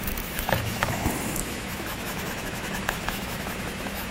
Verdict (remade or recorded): remade